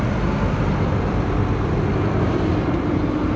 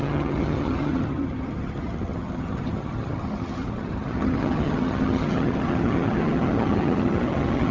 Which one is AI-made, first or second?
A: second